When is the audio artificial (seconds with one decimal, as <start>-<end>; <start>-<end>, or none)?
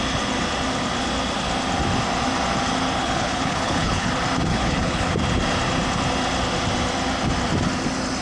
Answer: 3.0-4.1; 4.5-5.1